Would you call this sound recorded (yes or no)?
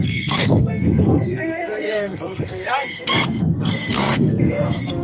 no